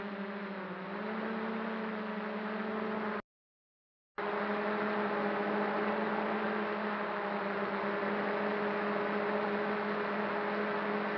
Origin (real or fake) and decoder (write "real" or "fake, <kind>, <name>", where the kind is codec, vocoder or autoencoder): real